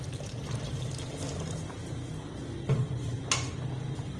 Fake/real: real